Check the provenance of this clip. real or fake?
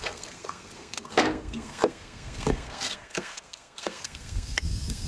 fake